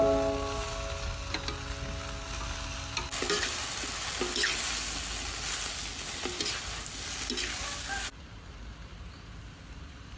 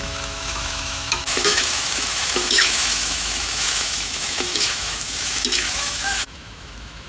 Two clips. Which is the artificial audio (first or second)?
second